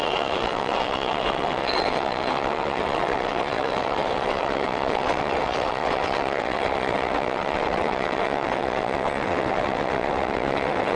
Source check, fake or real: fake